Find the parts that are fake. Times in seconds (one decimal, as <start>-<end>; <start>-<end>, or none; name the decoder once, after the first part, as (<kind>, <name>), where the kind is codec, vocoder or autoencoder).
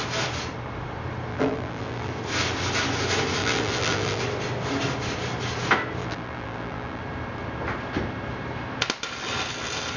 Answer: 1.3-2.1 (vocoder, BigVGAN v2); 3.4-4.2; 6.0-7.0